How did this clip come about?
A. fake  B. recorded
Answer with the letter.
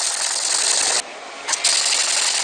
B